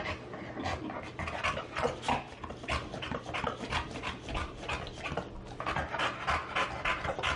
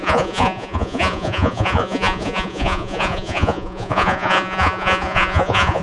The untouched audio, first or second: first